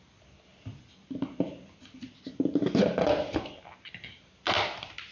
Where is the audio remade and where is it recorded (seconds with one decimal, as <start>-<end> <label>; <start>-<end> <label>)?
0.0-5.1 recorded